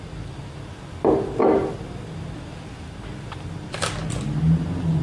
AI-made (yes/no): no